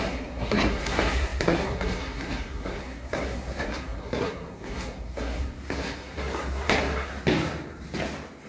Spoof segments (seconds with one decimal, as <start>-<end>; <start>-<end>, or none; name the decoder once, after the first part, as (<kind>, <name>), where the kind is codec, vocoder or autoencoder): 0.0-7.1 (codec, SNAC)